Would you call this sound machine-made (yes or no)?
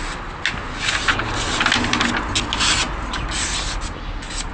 no